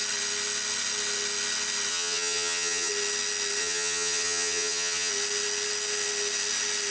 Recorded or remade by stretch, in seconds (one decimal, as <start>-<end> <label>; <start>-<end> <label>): 0.0-1.9 recorded; 1.9-2.9 remade; 2.9-3.6 recorded; 3.6-5.1 remade; 5.1-6.9 recorded